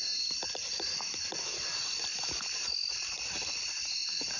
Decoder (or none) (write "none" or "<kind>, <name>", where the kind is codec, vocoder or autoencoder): none